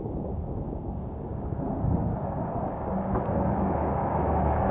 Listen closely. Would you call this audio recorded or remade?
remade